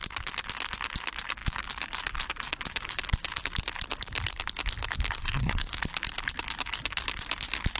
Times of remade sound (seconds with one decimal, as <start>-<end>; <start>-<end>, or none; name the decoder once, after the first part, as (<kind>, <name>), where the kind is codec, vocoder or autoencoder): 5.2-5.8 (codec, SNAC)